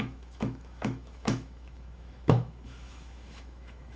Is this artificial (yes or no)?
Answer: yes